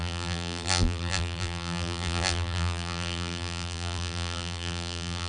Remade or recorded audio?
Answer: remade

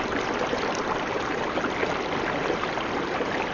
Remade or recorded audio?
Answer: recorded